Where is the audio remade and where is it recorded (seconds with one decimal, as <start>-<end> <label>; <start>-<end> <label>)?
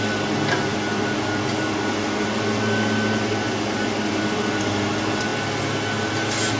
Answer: 0.0-6.6 recorded